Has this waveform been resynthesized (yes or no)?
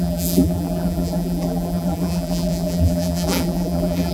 yes